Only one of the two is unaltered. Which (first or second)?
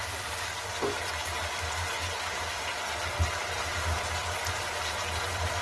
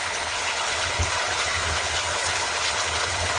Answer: first